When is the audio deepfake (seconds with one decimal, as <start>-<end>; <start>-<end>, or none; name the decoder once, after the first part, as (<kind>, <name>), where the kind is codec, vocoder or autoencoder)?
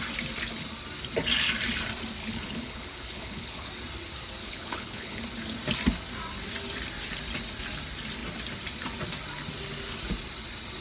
2.2-3.7 (codec, HILCodec); 4.4-5.2